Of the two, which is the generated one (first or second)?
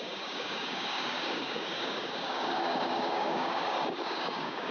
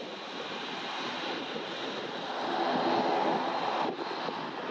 first